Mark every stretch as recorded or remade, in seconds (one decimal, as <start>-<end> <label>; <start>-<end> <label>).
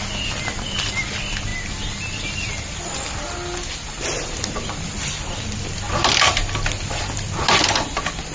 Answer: 0.0-8.3 recorded